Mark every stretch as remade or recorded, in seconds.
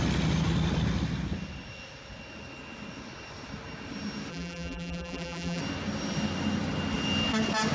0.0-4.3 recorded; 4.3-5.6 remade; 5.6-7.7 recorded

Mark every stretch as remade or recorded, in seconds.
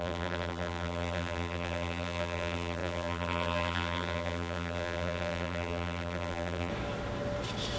0.0-6.7 remade; 6.7-7.8 recorded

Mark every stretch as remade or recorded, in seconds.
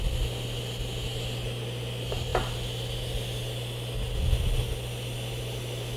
0.0-6.0 recorded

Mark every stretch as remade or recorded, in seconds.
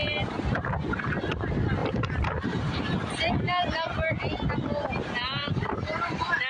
0.0-0.8 remade; 0.8-1.8 recorded; 1.8-3.4 remade; 3.4-5.4 recorded; 5.4-6.1 remade; 6.1-6.5 recorded